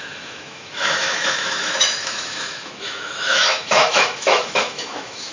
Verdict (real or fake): fake